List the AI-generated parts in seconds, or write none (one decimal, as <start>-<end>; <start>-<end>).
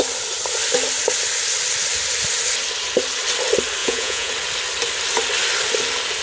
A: 3.8-4.3